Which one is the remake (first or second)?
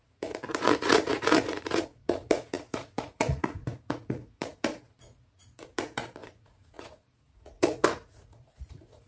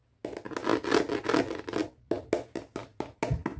first